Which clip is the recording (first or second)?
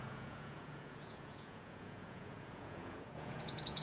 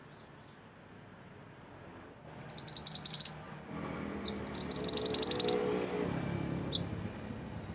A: second